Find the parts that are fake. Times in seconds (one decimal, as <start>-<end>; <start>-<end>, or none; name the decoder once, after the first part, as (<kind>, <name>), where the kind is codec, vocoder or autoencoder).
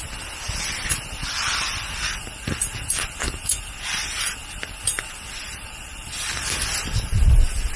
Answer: none